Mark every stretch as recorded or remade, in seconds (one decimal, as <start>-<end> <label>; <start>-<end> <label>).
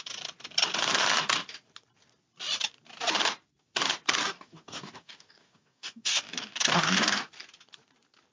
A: 0.0-4.2 recorded; 4.2-7.3 remade; 7.3-8.3 recorded